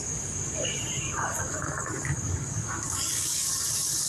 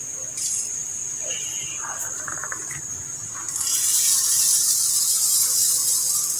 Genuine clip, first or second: second